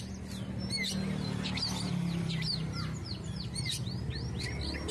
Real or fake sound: real